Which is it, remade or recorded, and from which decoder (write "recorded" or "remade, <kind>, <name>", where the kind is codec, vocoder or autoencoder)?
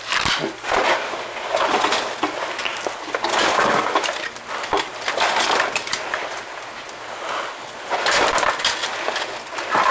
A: recorded